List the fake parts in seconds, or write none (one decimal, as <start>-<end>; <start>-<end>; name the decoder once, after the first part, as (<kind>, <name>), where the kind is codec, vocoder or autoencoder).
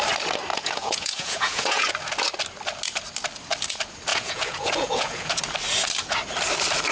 0.5-1.9 (vocoder, Vocos); 4.1-5.4